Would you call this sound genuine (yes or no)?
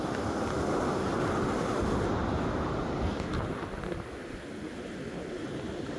yes